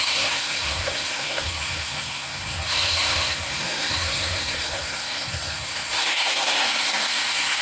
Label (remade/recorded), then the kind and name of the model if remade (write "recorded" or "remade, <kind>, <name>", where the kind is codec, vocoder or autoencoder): remade, codec, SNAC